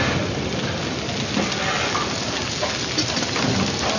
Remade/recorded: recorded